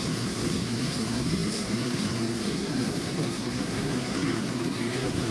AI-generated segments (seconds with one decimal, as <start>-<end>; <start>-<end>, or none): 0.0-5.3

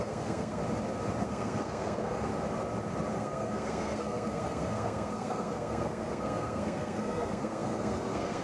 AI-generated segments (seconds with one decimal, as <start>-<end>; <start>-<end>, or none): 0.0-0.6; 1.2-2.3; 3.1-8.4

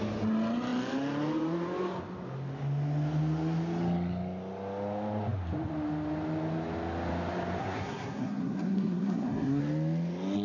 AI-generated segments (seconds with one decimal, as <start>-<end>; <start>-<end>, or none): 7.6-9.6

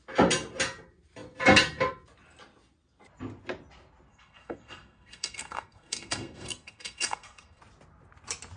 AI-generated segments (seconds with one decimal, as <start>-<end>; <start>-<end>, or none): 4.1-7.6

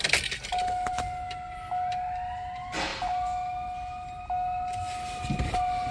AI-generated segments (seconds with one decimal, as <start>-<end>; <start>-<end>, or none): none

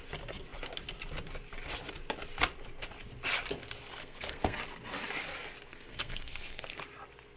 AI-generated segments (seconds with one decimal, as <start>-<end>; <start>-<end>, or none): 4.0-4.6; 5.7-6.8